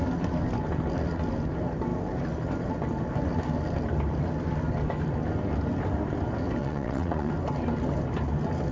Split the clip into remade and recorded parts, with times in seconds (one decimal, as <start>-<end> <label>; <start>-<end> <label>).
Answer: 0.0-6.6 recorded; 6.6-7.3 remade; 7.3-8.7 recorded